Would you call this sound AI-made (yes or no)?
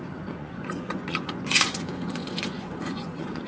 yes